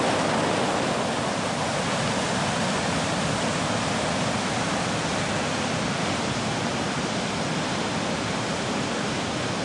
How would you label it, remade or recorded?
recorded